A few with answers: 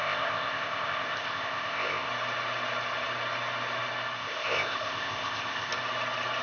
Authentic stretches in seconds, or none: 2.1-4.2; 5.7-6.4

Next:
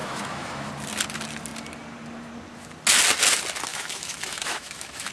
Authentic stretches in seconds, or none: 0.7-3.7

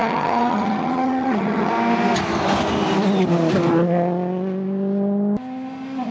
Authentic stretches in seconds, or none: 1.7-6.1

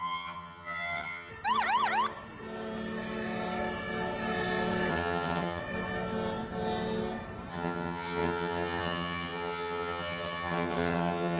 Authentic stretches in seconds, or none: 1.3-4.9; 5.6-7.5

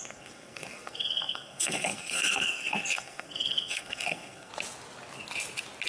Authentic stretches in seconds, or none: 4.5-5.9